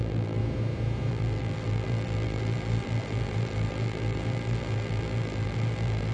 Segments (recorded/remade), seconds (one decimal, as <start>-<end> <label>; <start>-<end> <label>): 0.0-0.4 remade; 0.4-1.1 recorded; 1.1-6.1 remade

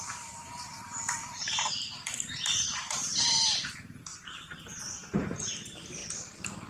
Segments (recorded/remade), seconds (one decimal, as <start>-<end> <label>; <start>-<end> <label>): 0.0-4.1 remade; 4.1-4.9 recorded; 4.9-6.0 remade; 6.0-6.7 recorded

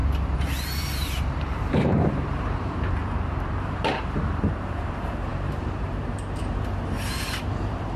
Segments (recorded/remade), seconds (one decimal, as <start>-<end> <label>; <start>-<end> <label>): 0.0-0.8 recorded; 0.8-8.0 remade

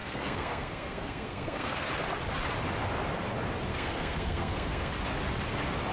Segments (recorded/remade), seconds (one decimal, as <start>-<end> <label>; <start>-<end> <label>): 0.0-1.9 remade; 1.9-3.7 recorded; 3.7-4.9 remade; 4.9-5.9 recorded

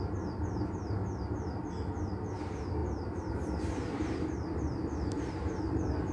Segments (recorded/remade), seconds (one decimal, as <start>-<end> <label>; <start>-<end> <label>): 0.0-1.0 remade; 1.0-2.4 recorded; 2.4-6.1 remade

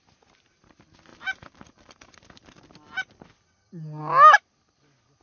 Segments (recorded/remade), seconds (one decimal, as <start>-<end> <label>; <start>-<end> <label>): 0.0-1.1 recorded; 1.1-2.6 remade; 2.6-5.2 recorded

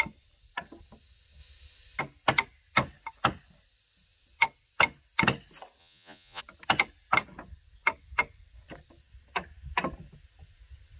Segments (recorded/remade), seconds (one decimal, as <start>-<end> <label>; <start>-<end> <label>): 0.0-5.8 recorded; 5.8-6.4 remade; 6.4-11.0 recorded